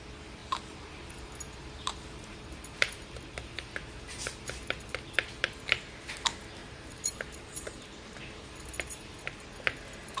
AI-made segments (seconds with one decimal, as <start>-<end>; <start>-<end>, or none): 0.4-3.7; 6.6-8.5